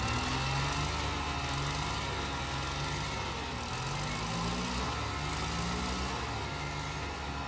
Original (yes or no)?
yes